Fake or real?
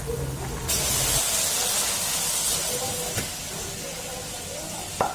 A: real